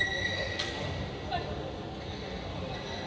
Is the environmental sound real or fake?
real